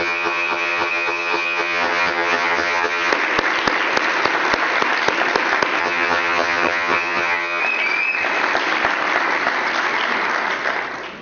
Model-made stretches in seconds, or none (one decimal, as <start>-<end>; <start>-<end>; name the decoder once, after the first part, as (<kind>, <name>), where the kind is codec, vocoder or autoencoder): 0.0-3.1 (vocoder, HiFi-GAN); 5.8-7.6